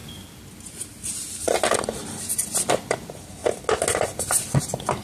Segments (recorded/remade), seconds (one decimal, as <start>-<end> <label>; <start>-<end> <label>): 0.0-1.8 recorded; 1.8-3.4 remade; 3.4-4.2 recorded; 4.2-5.0 remade